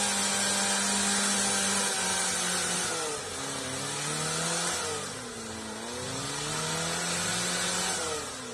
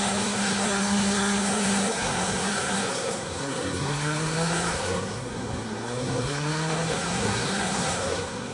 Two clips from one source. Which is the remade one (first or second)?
second